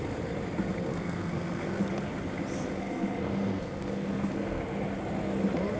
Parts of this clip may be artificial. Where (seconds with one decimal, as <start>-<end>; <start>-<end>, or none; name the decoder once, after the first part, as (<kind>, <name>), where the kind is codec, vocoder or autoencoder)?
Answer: 0.9-1.8 (codec, SNAC); 2.8-4.6